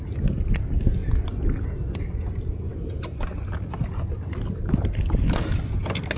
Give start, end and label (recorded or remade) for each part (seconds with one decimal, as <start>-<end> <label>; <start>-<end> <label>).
0.0-6.2 recorded